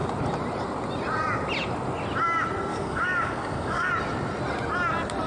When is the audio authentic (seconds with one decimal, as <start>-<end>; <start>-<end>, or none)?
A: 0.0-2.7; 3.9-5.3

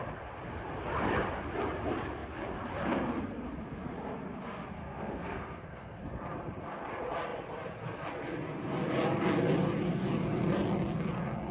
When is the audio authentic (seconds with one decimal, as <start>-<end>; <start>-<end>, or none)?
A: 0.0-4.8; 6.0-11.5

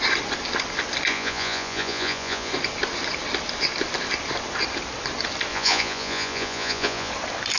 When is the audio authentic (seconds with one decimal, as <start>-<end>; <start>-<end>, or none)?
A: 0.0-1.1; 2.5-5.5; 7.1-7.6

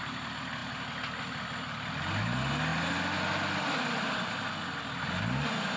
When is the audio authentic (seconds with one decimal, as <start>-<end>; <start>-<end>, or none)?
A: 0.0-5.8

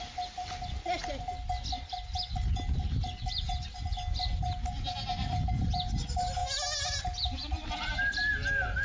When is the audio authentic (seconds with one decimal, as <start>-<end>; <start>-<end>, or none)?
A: 0.0-8.8